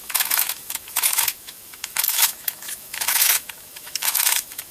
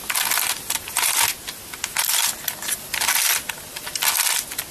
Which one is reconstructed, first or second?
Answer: first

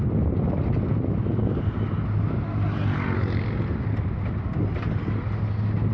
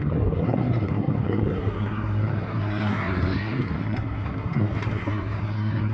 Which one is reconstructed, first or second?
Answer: second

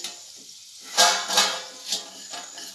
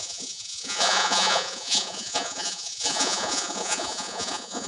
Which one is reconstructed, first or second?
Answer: second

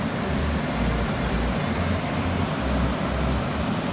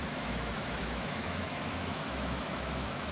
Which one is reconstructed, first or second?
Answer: second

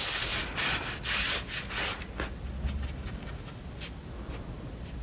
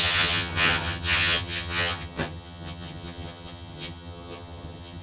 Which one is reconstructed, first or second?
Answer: second